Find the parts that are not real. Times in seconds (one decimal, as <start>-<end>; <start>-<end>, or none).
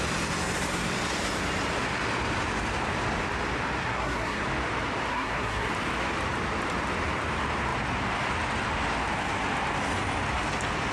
3.8-4.4; 5.1-5.7